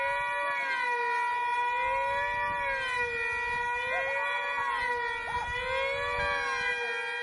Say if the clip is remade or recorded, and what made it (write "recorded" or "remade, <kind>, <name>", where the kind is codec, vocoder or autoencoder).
recorded